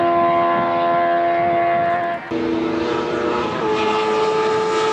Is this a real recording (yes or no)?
yes